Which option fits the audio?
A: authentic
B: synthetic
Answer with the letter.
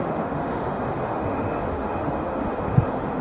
B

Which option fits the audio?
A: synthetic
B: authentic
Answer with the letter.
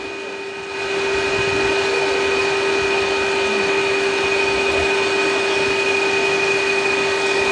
B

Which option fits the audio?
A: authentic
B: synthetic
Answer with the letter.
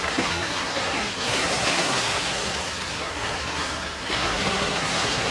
B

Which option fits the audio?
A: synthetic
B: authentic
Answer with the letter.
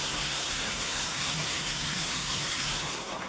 A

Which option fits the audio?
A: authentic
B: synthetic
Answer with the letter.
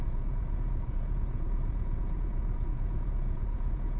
B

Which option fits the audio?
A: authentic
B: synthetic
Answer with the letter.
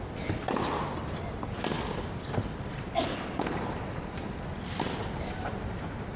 A